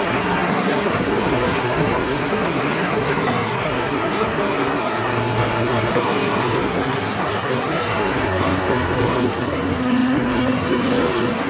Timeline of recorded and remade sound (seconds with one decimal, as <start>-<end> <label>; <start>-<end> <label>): 0.0-11.5 remade